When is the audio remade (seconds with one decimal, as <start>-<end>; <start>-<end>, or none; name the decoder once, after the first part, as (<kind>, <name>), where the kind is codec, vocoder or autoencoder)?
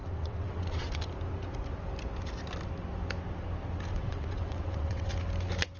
0.0-1.0 (vocoder, WaveNeXt); 3.9-5.1